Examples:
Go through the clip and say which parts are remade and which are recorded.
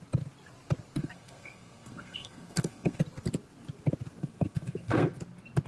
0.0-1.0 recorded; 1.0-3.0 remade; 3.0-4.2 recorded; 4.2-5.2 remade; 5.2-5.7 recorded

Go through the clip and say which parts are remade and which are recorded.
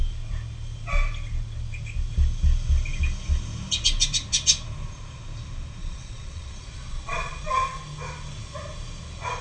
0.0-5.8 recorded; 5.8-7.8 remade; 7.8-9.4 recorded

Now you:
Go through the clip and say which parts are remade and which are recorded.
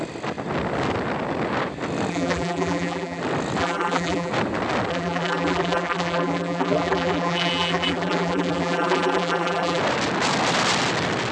0.0-2.1 recorded; 2.1-3.2 remade; 3.2-3.6 recorded; 3.6-4.3 remade; 4.3-4.9 recorded; 4.9-9.8 remade; 9.8-11.3 recorded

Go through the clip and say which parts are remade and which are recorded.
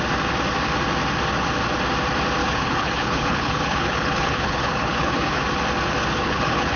0.0-2.4 recorded; 2.4-5.4 remade; 5.4-6.1 recorded; 6.1-6.8 remade